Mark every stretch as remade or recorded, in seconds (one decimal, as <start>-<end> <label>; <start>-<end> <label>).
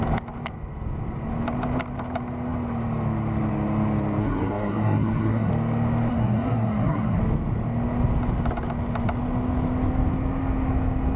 0.0-4.2 recorded; 4.2-5.5 remade; 5.5-6.1 recorded; 6.1-7.2 remade; 7.2-11.2 recorded